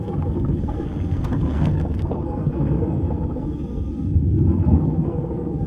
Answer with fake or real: fake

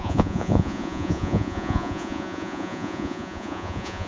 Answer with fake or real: fake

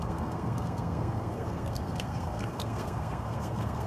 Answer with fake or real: fake